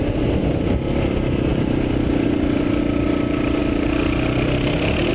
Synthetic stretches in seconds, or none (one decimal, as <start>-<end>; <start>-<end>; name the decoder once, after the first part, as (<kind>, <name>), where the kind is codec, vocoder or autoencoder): 1.5-2.8 (vocoder, BigVGAN v2); 3.6-5.1

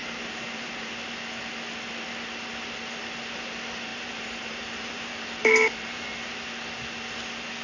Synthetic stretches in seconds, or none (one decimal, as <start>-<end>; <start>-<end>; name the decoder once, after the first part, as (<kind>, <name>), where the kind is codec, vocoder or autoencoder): 0.0-0.9 (vocoder, BigVGAN v2); 3.9-6.3

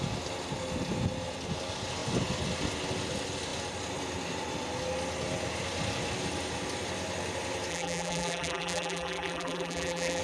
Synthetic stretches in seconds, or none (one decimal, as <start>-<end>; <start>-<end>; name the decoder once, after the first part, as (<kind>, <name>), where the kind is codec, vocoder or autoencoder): 7.7-10.2 (vocoder, BigVGAN v2)

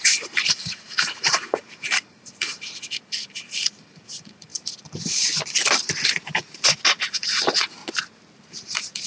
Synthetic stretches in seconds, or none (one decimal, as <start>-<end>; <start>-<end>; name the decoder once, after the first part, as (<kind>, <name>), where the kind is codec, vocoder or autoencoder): 0.0-4.5 (vocoder, BigVGAN v2); 7.1-7.8; 8.3-9.1

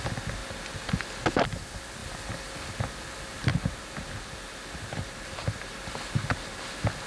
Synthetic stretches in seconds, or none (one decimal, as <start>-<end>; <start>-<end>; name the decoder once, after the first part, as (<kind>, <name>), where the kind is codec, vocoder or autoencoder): 0.4-1.0 (vocoder, BigVGAN v2); 2.0-2.7; 3.5-5.9

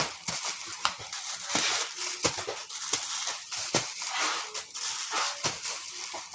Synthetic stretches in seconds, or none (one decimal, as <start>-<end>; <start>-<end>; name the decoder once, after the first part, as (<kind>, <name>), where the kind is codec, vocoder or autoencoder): none

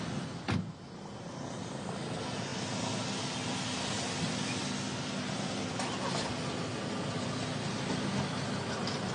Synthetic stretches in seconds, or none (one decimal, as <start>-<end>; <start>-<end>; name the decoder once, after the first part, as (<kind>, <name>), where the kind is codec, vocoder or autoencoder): none

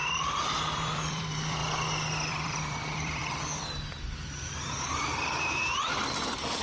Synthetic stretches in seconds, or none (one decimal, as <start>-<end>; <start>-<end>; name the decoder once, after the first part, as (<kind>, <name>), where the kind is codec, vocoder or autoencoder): 0.5-1.6 (vocoder, BigVGAN v2); 2.3-6.6